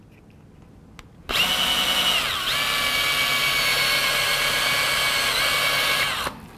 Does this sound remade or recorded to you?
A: recorded